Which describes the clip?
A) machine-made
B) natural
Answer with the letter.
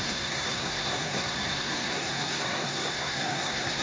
A